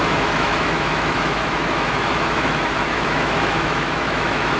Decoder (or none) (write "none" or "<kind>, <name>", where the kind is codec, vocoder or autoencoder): autoencoder, DAC-VAE